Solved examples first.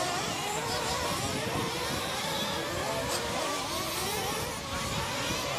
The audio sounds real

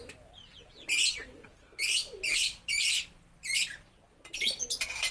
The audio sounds real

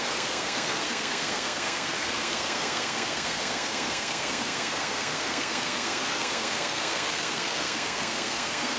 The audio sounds fake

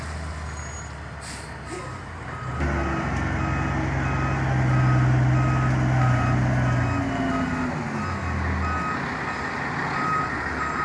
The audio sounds real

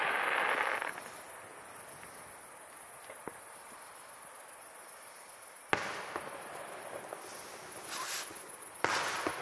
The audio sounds real